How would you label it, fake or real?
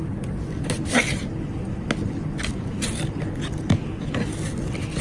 real